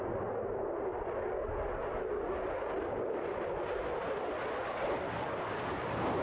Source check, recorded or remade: recorded